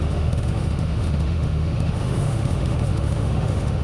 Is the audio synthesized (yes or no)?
yes